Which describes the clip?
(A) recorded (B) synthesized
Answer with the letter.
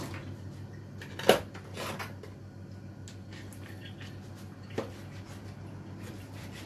A